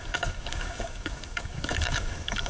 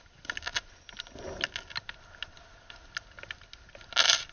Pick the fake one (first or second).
first